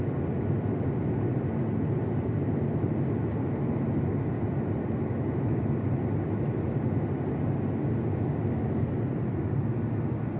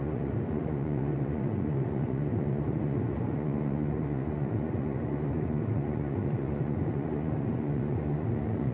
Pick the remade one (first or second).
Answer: second